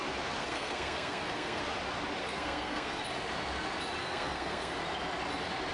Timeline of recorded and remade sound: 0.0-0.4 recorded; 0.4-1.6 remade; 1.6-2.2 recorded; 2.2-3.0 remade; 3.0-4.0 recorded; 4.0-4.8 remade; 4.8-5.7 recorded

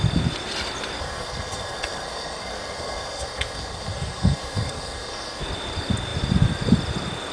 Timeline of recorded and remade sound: 0.0-1.0 recorded; 1.0-5.4 remade; 5.4-7.3 recorded

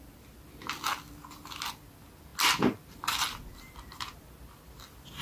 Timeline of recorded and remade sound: 0.0-5.2 recorded

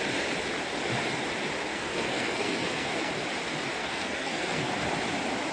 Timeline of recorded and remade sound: 0.0-1.7 recorded; 1.7-3.1 remade; 3.1-3.8 recorded; 3.8-4.7 remade; 4.7-5.5 recorded

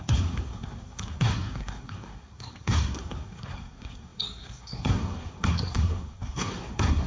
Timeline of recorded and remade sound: 0.0-7.1 remade

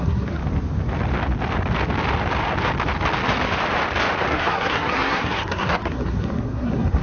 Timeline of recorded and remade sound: 0.0-0.4 remade; 0.4-4.3 recorded; 4.3-7.0 remade

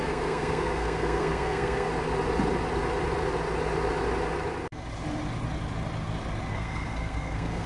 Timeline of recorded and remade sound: 0.0-1.9 remade; 1.9-6.5 recorded; 6.5-7.7 remade

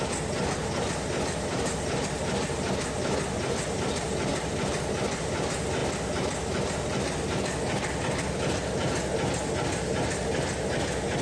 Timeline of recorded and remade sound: 0.0-11.2 recorded